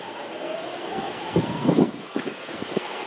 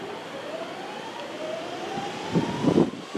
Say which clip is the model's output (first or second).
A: first